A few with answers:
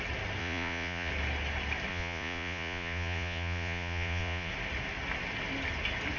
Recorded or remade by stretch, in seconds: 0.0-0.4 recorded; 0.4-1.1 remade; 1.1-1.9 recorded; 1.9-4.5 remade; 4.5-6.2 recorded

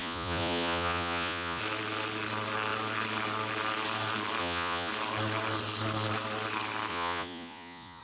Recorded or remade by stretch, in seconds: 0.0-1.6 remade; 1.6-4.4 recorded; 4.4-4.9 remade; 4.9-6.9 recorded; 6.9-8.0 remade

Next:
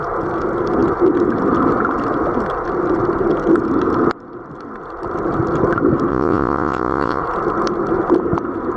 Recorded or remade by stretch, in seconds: 0.0-6.1 recorded; 6.1-7.2 remade; 7.2-8.8 recorded

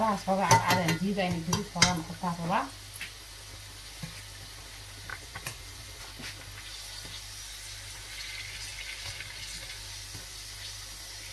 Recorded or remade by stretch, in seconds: 0.0-5.1 recorded; 5.1-6.0 remade; 6.0-11.3 recorded